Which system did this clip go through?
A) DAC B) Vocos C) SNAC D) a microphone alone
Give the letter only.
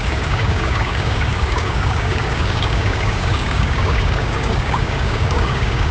A